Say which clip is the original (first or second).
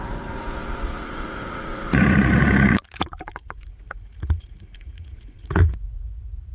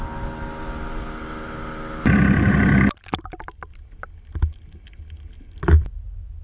second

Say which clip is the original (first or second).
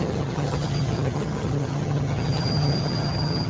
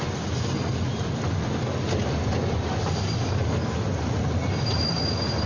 second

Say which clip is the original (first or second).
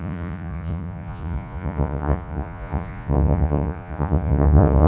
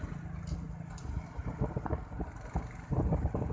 second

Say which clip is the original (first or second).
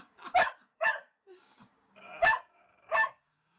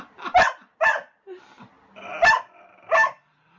second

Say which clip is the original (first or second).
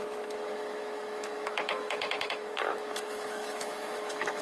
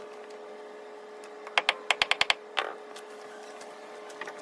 second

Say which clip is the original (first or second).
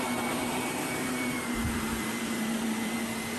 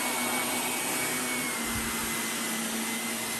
second